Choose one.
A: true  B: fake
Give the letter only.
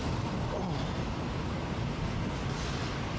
A